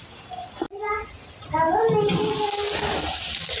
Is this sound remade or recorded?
recorded